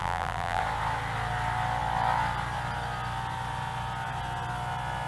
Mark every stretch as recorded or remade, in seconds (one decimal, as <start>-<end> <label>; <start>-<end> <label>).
0.0-0.6 remade; 0.6-5.1 recorded